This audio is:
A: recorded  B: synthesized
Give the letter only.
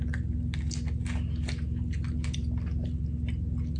A